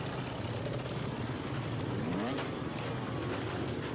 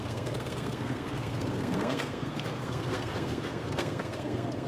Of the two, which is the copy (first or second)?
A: second